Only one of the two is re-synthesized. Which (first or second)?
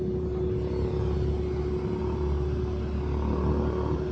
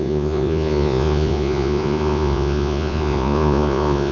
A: second